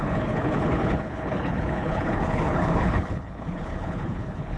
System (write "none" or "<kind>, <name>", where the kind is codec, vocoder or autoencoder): codec, HILCodec